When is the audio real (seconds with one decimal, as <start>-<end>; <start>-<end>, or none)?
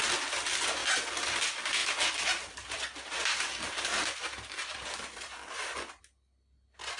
0.0-1.8; 6.0-7.0